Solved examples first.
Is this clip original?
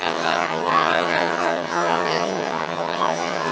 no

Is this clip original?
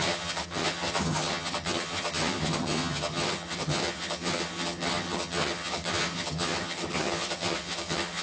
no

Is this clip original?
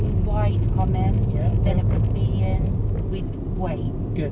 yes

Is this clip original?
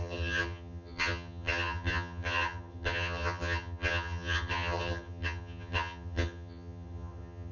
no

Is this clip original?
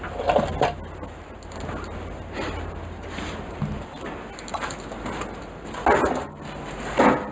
yes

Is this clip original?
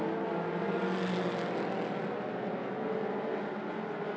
yes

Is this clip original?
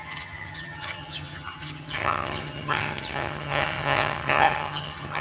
no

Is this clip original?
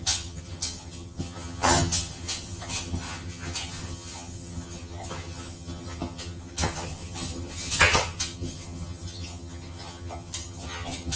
no